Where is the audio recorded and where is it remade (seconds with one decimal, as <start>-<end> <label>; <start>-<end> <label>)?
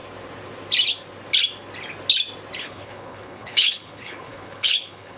0.0-2.6 recorded; 2.6-5.2 remade